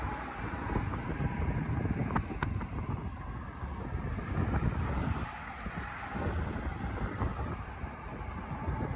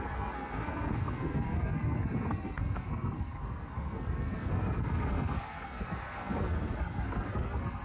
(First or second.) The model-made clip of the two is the second